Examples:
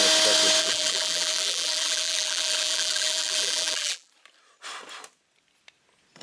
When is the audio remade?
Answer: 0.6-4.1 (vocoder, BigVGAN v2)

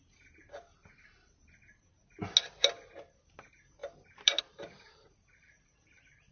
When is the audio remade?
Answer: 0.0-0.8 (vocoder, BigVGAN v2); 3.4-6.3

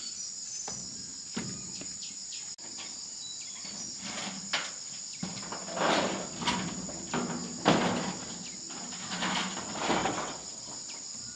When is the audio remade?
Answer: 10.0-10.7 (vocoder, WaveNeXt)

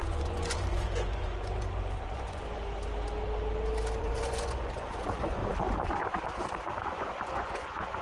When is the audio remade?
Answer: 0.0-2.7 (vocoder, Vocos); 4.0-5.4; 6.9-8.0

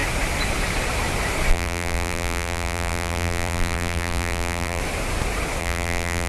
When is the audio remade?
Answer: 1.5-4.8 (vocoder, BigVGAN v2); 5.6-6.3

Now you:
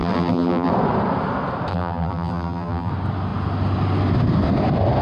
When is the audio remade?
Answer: 0.0-0.7 (vocoder, BigVGAN v2); 1.7-2.9

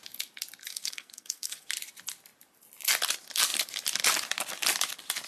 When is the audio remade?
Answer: 0.6-1.7 (codec, SNAC)

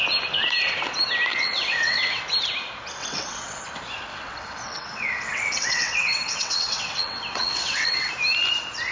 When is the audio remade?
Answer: 1.3-2.2 (vocoder, WaveNeXt); 3.0-3.6; 4.1-8.1